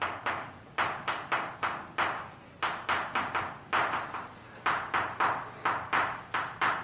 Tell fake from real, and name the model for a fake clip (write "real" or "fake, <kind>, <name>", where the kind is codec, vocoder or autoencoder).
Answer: real